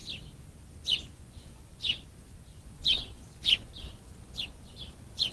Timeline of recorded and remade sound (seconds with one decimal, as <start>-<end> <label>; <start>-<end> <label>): 0.0-0.7 recorded; 0.7-5.3 remade

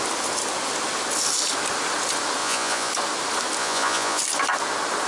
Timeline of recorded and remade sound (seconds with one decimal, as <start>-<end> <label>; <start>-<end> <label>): 0.0-2.4 recorded; 2.4-2.9 remade; 2.9-3.6 recorded; 3.6-4.2 remade; 4.2-5.1 recorded

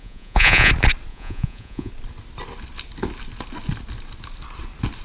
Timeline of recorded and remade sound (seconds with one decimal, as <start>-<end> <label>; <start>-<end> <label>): 0.0-0.7 remade; 0.7-1.1 recorded; 1.1-1.9 remade; 1.9-5.0 recorded

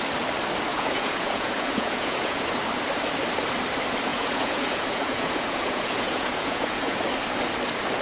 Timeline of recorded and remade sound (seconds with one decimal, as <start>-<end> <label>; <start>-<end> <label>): 0.0-0.7 recorded; 0.7-2.4 remade; 2.4-4.1 recorded; 4.1-7.0 remade; 7.0-8.0 recorded

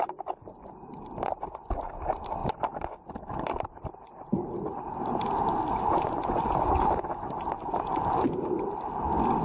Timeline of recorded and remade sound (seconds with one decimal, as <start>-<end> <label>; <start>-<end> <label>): 0.0-9.4 recorded

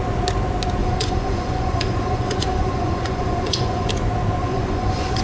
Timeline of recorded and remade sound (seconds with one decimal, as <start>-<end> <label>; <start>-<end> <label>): 0.0-0.8 recorded; 0.8-3.9 remade; 3.9-4.4 recorded; 4.4-5.2 remade

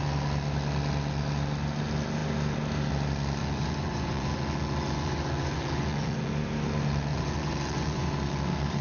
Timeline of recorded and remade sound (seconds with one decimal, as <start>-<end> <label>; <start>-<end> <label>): 0.0-3.4 recorded; 3.4-6.3 remade; 6.3-7.1 recorded; 7.1-8.1 remade; 8.1-8.8 recorded